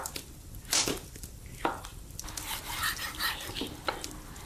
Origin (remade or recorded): recorded